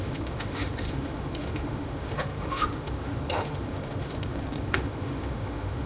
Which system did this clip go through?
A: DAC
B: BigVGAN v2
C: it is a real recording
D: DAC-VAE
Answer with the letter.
D